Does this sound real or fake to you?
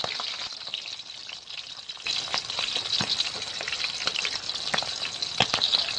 real